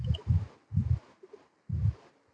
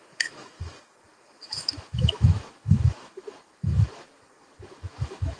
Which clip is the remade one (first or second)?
second